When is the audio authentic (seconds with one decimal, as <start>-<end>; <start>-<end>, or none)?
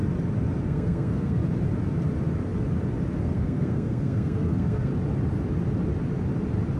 0.0-0.6; 1.4-3.2; 4.9-6.8